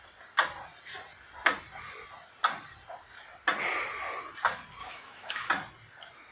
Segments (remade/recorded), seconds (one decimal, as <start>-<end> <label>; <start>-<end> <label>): 0.0-4.8 recorded; 4.8-5.5 remade; 5.5-6.3 recorded